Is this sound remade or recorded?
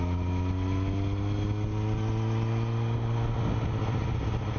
recorded